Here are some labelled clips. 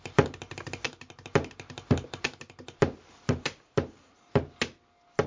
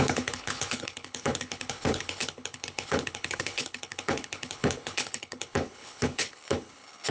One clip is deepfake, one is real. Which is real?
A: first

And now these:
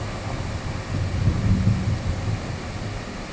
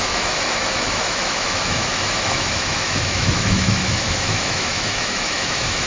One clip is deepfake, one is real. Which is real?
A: first